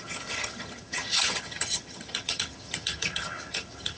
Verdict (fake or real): fake